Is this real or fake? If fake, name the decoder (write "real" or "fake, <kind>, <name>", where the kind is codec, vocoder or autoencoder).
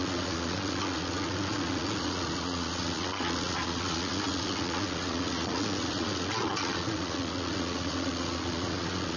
fake, vocoder, Vocos